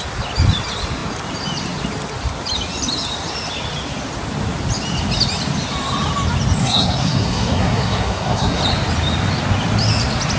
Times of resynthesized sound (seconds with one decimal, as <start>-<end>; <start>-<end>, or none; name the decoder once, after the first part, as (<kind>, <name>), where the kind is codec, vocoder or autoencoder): 6.6-8.6 (codec, SNAC)